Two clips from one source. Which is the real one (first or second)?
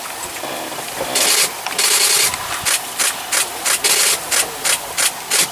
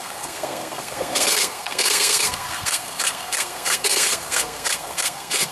first